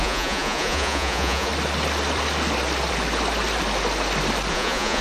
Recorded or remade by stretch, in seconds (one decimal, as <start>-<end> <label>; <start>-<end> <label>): 0.0-1.5 remade; 1.5-4.5 recorded; 4.5-5.0 remade